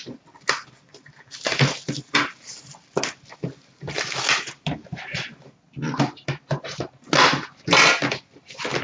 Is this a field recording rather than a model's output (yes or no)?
yes